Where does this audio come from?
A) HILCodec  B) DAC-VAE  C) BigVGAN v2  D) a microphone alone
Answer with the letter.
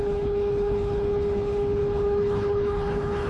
A